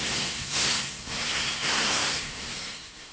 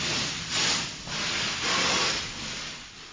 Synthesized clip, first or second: first